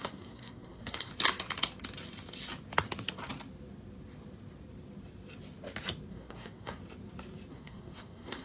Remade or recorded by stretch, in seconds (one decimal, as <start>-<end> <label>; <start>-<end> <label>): 0.0-1.1 remade; 1.1-6.1 recorded; 6.1-6.8 remade; 6.8-7.5 recorded; 7.5-8.4 remade